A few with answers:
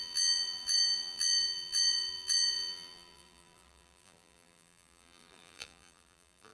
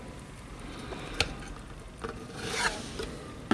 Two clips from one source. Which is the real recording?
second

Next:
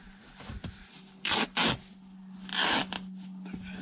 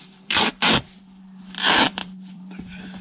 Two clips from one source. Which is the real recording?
first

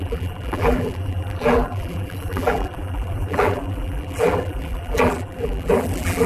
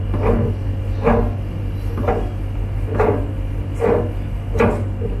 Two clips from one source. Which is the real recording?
second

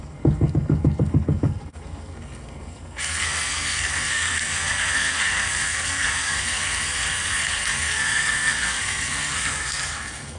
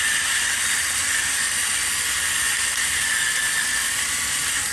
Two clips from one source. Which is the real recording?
second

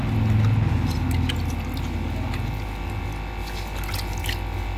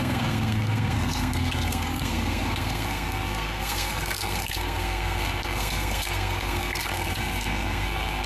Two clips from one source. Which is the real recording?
first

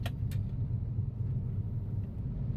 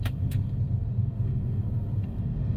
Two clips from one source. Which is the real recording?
first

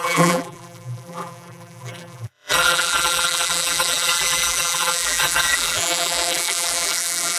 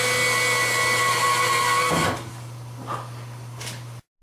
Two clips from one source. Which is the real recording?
second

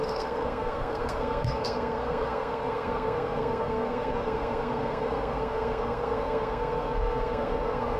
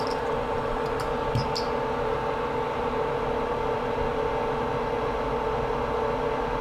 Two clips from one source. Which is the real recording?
second